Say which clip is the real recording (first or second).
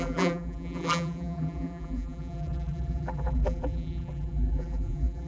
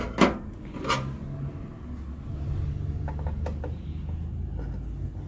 second